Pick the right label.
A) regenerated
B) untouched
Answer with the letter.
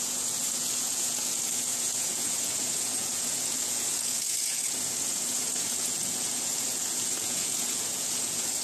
A